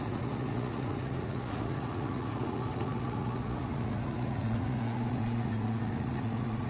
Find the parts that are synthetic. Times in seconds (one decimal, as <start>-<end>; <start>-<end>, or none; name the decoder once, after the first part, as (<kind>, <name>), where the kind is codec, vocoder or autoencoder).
0.0-6.7 (vocoder, Vocos)